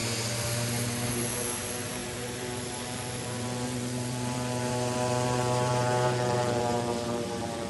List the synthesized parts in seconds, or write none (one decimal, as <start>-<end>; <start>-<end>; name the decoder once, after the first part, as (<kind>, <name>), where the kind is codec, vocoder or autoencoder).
1.1-7.7 (vocoder, BigVGAN v2)